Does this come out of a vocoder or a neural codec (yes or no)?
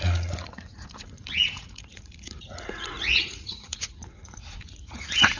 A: yes